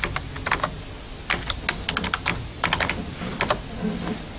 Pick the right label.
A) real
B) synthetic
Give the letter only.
A